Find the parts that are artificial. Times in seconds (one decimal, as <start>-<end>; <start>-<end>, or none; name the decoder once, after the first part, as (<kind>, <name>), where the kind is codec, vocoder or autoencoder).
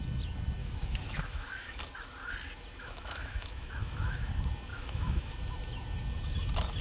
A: 0.6-1.8 (autoencoder, DAC-VAE); 2.8-4.3; 4.7-5.3